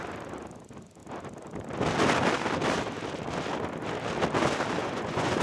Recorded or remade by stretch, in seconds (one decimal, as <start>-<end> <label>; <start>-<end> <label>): 0.0-4.8 recorded; 4.8-5.4 remade